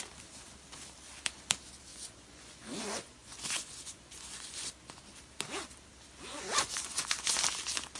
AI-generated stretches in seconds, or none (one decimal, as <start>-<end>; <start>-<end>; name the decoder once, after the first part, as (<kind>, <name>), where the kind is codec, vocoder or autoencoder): 1.9-4.7 (vocoder, Vocos); 6.3-7.4